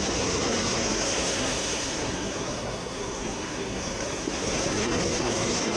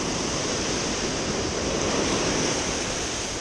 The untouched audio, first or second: second